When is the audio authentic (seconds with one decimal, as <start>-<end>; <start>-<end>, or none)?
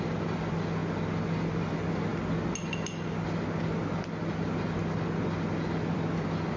0.0-6.6